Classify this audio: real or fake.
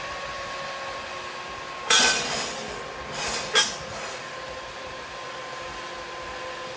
real